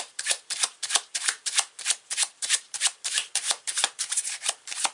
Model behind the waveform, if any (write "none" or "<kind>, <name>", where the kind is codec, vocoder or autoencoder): vocoder, BigVGAN v2